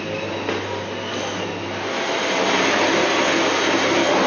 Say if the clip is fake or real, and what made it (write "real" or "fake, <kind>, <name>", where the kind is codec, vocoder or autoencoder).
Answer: real